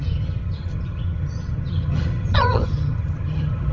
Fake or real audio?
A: fake